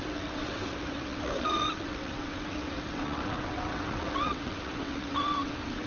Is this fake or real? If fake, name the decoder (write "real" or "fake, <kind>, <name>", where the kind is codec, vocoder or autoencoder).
fake, vocoder, WaveNeXt